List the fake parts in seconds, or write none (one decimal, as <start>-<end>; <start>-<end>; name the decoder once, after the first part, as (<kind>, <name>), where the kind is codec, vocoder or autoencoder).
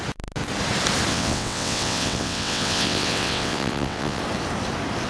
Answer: 1.1-4.2 (vocoder, WaveNeXt)